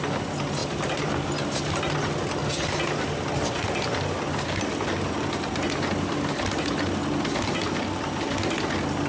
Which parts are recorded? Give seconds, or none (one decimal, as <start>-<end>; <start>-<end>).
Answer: 0.0-9.1